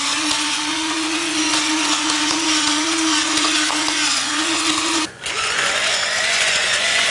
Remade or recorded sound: remade